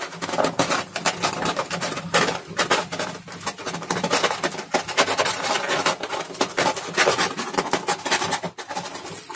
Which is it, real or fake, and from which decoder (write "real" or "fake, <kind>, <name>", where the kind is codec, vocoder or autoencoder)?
real